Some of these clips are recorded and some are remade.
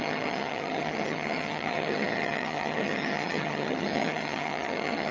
remade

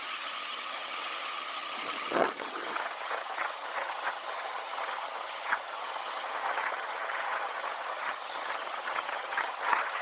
remade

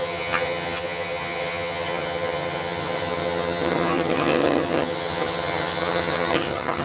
remade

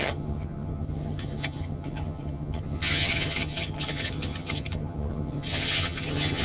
remade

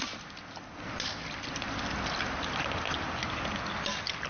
recorded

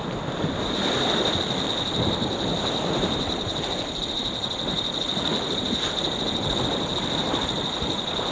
recorded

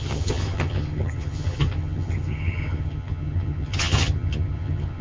remade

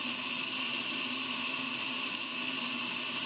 recorded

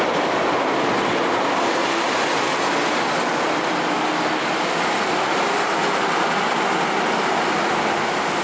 recorded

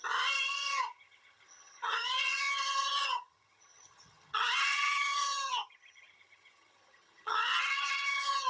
remade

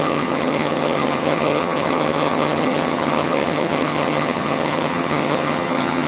remade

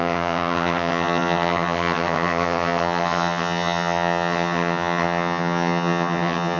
remade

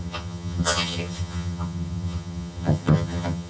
remade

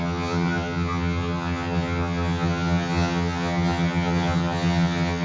remade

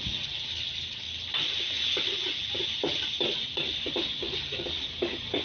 recorded